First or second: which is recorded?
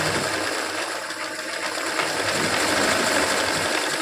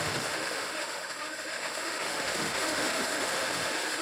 first